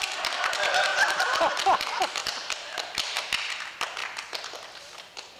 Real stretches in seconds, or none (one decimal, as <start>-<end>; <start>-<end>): 0.0-0.9; 1.5-2.2; 3.2-5.4